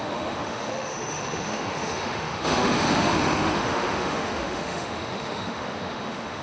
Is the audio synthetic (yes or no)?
yes